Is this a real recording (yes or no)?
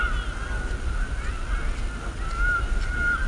yes